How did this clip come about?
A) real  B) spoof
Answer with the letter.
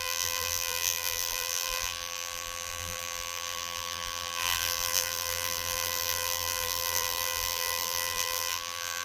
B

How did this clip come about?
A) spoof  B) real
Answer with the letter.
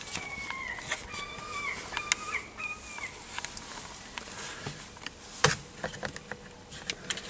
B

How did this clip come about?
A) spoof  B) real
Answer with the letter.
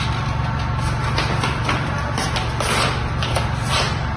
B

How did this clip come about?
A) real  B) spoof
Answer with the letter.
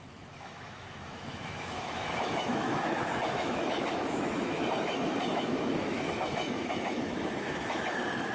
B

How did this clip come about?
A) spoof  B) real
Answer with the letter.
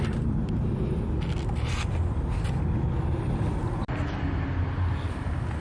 B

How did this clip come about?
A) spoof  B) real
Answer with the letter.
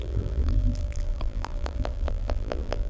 A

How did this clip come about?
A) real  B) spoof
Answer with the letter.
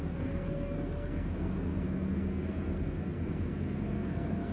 B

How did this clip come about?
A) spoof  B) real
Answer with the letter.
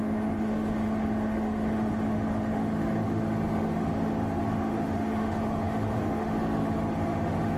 A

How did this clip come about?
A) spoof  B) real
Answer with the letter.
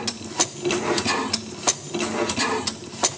B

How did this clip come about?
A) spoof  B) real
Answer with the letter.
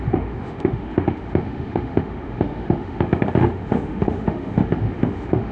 A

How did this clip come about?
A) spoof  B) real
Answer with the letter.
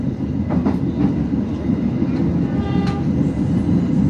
B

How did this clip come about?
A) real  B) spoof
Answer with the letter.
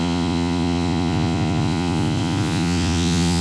B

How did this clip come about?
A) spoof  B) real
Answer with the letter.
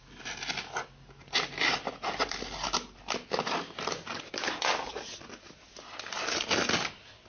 B